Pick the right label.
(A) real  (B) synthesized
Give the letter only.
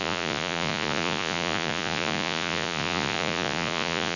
B